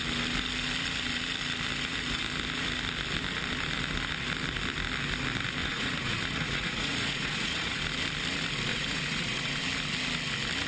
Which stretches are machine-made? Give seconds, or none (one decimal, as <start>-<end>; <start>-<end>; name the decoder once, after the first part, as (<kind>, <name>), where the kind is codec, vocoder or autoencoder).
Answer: 5.6-7.8 (vocoder, Vocos); 8.7-9.6